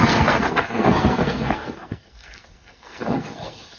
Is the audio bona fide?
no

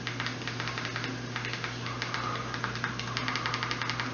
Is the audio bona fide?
yes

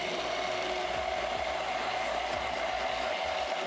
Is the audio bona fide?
yes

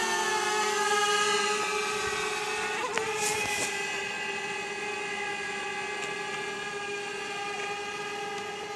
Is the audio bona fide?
yes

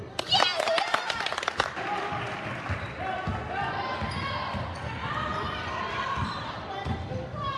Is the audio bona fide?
yes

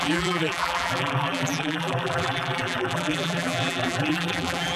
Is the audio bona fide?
no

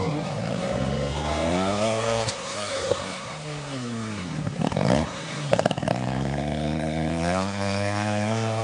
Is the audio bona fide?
no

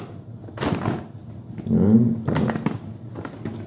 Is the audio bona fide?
yes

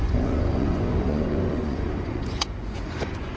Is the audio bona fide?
no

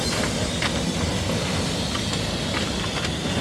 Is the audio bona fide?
yes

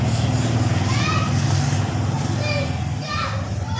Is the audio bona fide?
yes